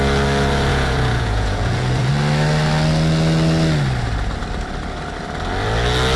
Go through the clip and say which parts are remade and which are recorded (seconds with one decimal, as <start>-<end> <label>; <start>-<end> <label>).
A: 0.0-0.7 recorded; 0.7-2.1 remade; 2.1-6.2 recorded